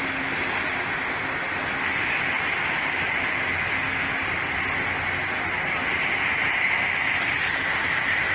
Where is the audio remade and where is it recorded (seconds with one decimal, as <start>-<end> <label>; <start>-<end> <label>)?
0.0-8.3 recorded